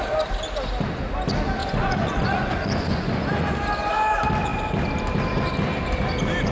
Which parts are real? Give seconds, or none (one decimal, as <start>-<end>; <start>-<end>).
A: 0.0-1.6; 3.5-6.5